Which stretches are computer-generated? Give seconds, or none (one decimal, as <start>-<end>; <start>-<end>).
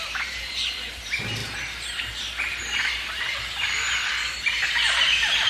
0.0-1.4; 4.4-5.5